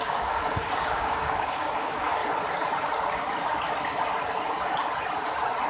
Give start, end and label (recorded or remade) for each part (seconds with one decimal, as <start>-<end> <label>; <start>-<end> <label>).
0.0-2.2 remade; 2.2-5.7 recorded